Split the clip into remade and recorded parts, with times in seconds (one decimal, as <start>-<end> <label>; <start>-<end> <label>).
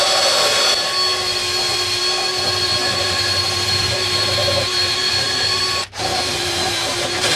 0.0-2.7 recorded; 2.7-7.4 remade